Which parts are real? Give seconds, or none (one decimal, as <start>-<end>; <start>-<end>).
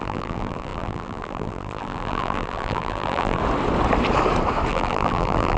3.4-4.7